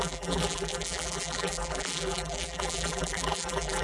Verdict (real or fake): fake